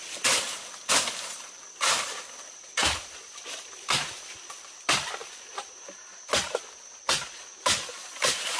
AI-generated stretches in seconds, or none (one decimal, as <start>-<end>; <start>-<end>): none